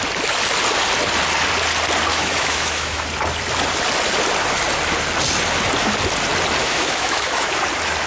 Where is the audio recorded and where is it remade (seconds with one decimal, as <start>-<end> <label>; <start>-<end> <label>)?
0.0-2.1 recorded; 2.1-3.0 remade; 3.0-6.6 recorded; 6.6-7.6 remade; 7.6-8.1 recorded